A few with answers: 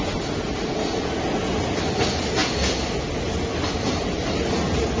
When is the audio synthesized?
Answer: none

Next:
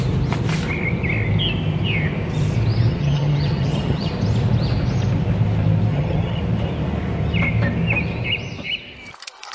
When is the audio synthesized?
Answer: 2.9-4.1 (vocoder, HiFi-GAN); 5.9-6.4

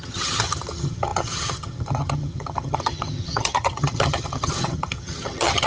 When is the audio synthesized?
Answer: 0.0-5.7 (vocoder, HiFi-GAN)

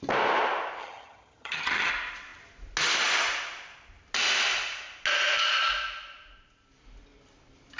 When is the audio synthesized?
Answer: 0.8-1.9 (vocoder, HiFi-GAN)

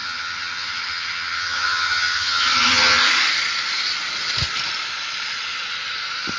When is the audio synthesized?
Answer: 0.0-3.0 (vocoder, HiFi-GAN)